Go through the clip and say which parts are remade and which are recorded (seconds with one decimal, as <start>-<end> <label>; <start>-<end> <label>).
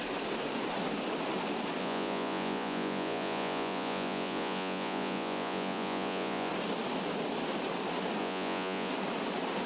0.0-1.8 recorded; 1.8-6.5 remade; 6.5-8.2 recorded; 8.2-8.9 remade; 8.9-9.7 recorded